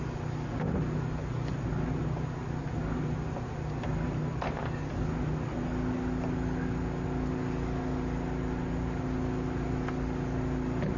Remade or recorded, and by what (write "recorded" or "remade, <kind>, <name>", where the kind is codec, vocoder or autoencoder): recorded